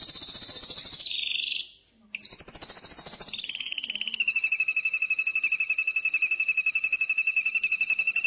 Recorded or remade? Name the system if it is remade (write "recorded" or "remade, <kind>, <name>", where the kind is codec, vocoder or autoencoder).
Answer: recorded